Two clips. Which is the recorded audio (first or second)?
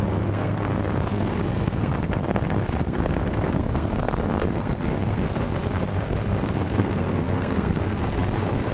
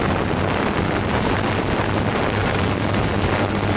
second